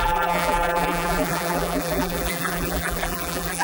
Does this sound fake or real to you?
fake